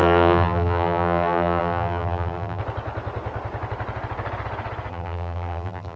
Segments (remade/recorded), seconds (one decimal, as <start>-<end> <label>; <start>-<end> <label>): 0.0-2.6 remade; 2.6-4.9 recorded; 4.9-6.0 remade